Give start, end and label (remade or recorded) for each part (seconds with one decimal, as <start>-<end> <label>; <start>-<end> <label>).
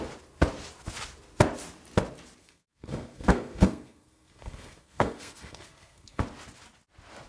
0.0-2.4 recorded; 2.4-6.2 remade; 6.2-7.3 recorded